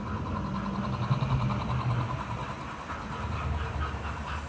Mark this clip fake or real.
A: real